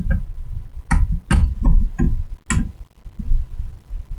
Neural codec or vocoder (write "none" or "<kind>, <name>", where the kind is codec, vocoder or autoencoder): none